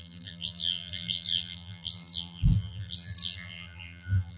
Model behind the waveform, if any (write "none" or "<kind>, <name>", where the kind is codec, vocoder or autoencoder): vocoder, BigVGAN v2